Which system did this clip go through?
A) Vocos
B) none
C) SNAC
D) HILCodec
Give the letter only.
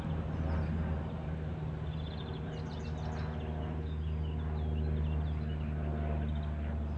B